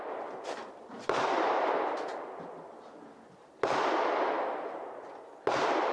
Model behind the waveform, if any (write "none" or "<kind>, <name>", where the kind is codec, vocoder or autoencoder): none